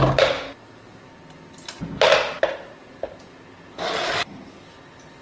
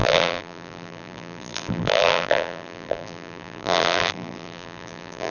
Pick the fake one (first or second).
second